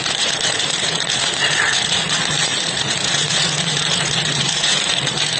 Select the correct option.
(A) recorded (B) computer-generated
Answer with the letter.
B